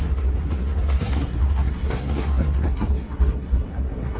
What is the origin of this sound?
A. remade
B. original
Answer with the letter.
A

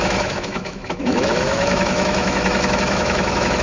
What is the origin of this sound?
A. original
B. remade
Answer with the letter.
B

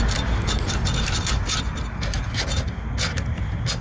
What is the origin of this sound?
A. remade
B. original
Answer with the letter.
B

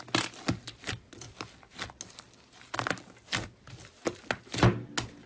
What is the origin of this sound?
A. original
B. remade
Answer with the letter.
A